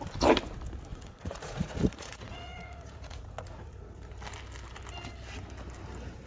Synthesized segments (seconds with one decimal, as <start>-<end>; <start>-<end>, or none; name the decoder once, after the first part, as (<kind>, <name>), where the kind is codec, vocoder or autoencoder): 0.9-4.1 (vocoder, Vocos)